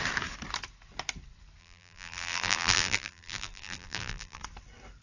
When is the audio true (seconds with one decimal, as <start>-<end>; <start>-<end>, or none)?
0.0-1.6; 4.4-5.0